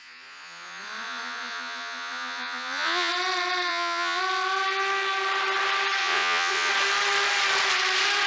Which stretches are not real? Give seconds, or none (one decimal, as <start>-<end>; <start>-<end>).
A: 0.0-3.1; 3.7-4.2; 6.0-6.7